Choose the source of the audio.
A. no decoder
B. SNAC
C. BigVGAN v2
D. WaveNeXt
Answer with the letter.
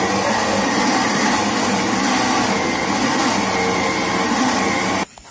A